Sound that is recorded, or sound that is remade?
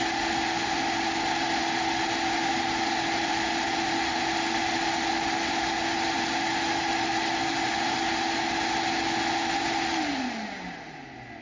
recorded